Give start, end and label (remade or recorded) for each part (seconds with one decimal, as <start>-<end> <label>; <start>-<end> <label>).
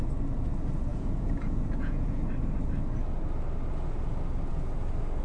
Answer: 0.0-0.9 recorded; 0.9-2.3 remade; 2.3-5.2 recorded